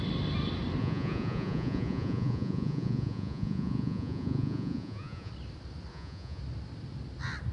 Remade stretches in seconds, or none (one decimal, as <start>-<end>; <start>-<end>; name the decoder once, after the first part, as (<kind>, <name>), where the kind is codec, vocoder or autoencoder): 0.8-5.3 (vocoder, Vocos); 5.9-6.4